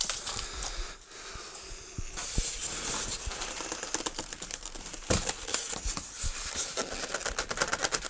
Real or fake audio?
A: real